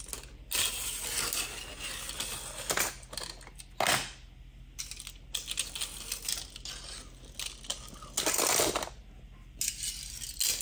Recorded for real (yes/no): yes